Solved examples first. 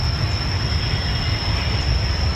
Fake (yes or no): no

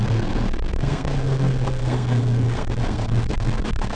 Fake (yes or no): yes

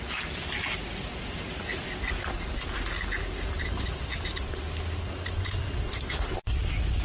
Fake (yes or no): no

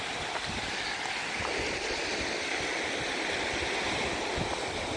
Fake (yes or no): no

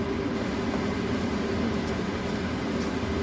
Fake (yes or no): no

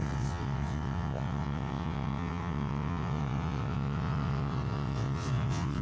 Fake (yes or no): yes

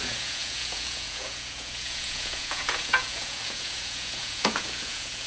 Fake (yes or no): yes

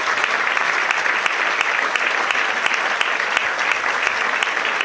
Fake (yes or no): no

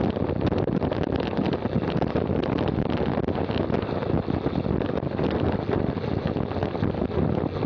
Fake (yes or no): no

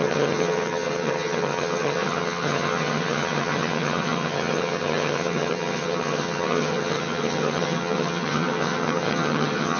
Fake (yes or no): yes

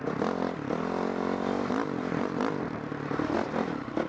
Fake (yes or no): yes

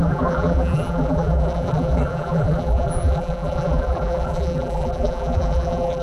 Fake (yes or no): yes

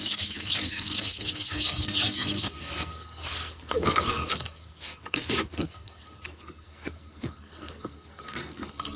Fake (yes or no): yes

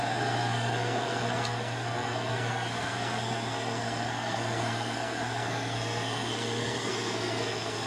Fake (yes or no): yes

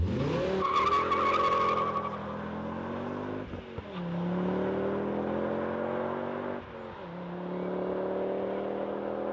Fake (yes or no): no